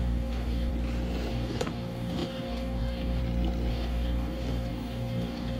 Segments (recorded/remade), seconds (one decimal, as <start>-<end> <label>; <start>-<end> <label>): 0.0-0.7 remade; 0.7-1.3 recorded; 1.3-3.2 remade; 3.2-3.7 recorded; 3.7-5.6 remade